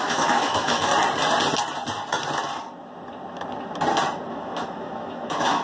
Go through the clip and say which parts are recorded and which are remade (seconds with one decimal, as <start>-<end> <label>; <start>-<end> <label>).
0.0-0.9 remade; 0.9-4.3 recorded; 4.3-5.6 remade